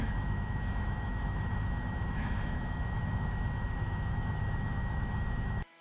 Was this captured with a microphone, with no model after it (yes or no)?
no